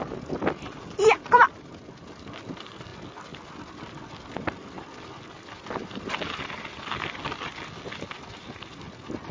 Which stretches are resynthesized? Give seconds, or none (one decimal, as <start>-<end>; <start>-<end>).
none